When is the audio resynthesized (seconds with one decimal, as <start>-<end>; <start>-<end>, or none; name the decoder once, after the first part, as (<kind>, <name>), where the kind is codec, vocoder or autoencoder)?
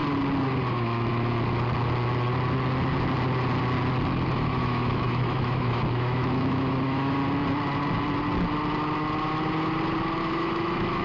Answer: 0.7-1.1 (autoencoder, DAC-VAE); 4.3-7.2; 10.3-11.0